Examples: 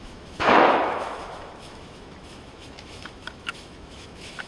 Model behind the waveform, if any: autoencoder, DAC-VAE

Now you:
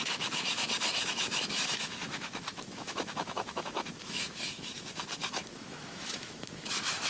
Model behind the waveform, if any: autoencoder, DAC-VAE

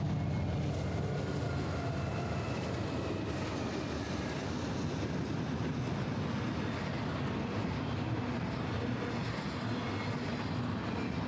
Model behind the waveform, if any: none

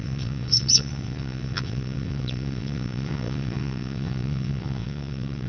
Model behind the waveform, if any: vocoder, WaveNeXt